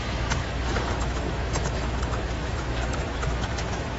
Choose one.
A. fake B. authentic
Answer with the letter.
A